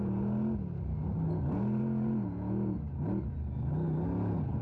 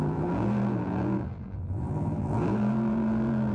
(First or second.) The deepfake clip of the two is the second